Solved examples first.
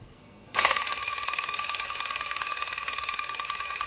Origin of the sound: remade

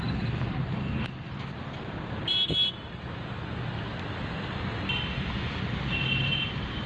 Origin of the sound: recorded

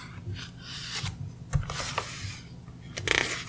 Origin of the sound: recorded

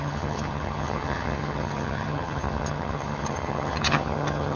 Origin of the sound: remade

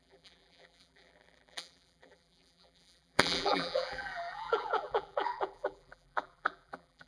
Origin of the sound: remade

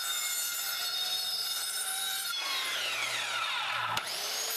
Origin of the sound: remade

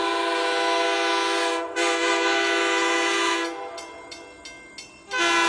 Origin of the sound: recorded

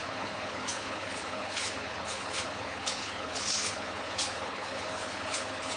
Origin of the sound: remade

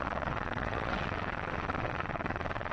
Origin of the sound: remade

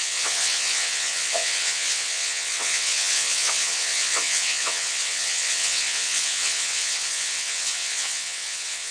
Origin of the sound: remade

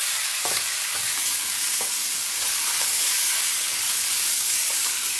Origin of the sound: remade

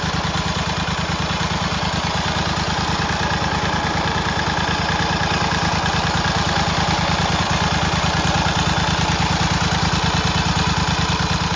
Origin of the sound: recorded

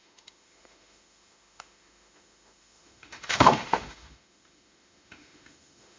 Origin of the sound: remade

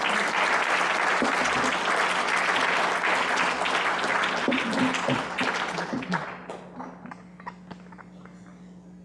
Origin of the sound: recorded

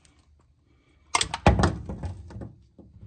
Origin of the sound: recorded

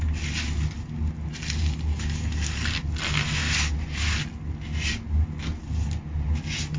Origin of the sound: recorded